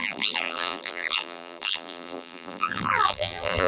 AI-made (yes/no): yes